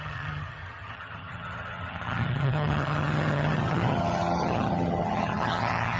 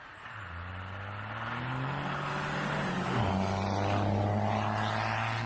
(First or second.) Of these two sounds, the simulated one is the first